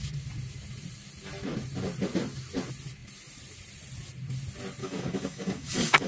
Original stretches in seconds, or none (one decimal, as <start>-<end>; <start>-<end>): 0.0-4.8